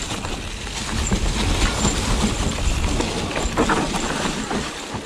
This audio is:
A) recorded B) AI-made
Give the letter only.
A